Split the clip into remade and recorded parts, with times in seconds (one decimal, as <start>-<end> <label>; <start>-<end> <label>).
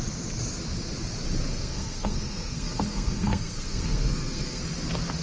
0.0-1.5 recorded; 1.5-4.6 remade; 4.6-5.2 recorded